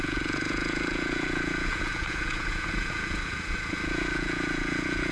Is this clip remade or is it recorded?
remade